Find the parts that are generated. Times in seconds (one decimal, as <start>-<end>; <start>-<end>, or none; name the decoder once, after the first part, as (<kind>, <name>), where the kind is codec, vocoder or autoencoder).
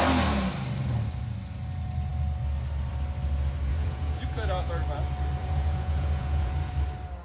3.7-4.7 (vocoder, Vocos); 5.4-6.7